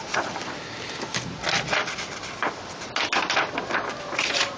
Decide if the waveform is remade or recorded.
recorded